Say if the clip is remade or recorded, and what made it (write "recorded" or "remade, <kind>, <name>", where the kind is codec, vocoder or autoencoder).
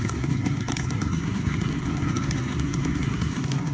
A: remade, codec, SNAC